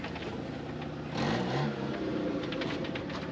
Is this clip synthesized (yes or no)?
no